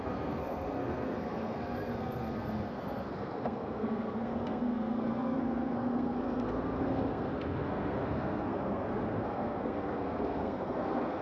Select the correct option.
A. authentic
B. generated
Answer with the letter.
B